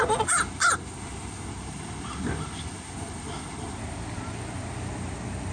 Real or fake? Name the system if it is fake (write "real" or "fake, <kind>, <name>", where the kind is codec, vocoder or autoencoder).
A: real